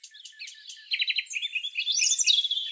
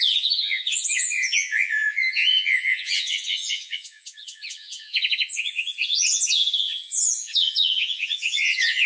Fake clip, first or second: second